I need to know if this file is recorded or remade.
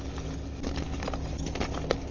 recorded